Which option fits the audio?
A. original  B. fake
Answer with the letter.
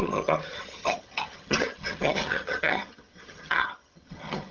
B